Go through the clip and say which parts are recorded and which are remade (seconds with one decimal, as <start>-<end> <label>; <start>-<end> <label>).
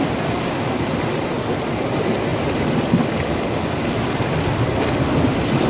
0.0-5.7 recorded